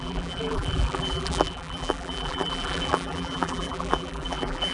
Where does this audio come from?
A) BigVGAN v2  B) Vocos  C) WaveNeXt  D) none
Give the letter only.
A